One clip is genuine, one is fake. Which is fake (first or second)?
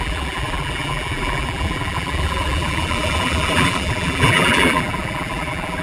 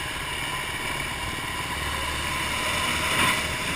first